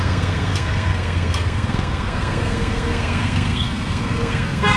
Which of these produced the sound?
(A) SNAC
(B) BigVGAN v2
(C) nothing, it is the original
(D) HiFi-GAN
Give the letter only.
A